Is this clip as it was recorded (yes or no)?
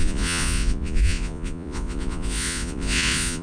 no